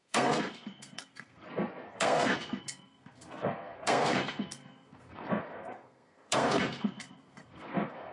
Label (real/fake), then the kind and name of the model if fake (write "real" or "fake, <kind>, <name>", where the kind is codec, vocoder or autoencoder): fake, codec, SNAC